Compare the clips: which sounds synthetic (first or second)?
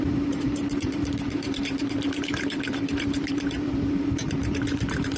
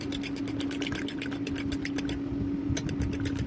first